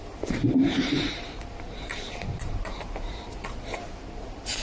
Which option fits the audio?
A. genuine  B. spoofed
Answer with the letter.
B